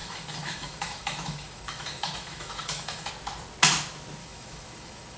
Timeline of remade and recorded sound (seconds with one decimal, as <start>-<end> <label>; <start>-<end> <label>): 0.0-3.1 remade; 3.1-4.2 recorded; 4.2-5.2 remade